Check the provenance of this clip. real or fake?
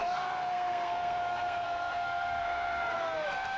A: fake